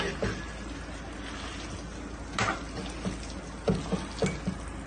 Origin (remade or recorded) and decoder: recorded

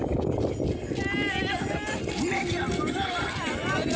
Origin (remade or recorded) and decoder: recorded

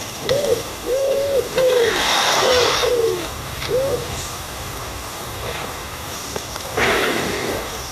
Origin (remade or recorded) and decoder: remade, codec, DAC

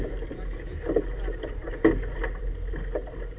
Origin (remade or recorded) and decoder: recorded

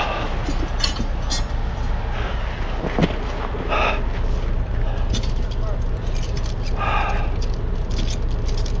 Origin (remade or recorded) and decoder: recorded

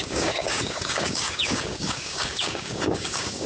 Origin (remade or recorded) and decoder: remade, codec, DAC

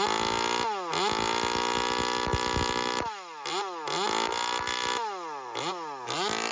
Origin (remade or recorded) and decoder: recorded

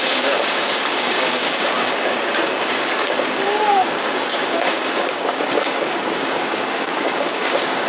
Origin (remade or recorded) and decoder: remade, codec, DAC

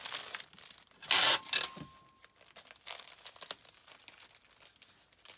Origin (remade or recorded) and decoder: recorded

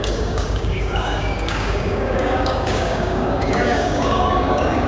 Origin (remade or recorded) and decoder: remade, codec, DAC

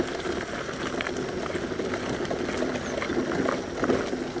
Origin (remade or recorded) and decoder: recorded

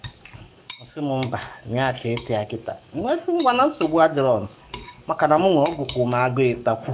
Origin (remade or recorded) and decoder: remade, codec, DAC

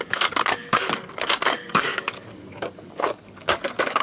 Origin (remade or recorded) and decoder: remade, codec, DAC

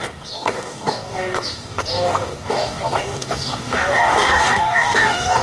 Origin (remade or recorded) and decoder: remade, codec, DAC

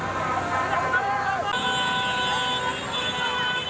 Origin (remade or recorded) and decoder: recorded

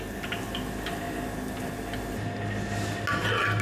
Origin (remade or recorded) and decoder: recorded